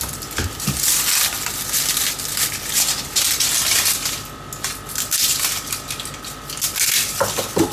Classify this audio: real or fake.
real